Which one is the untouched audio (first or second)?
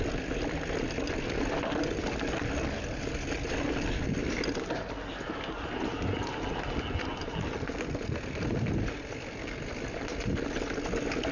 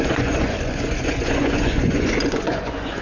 first